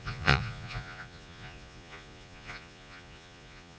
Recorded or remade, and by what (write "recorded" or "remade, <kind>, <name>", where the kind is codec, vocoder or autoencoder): remade, vocoder, Vocos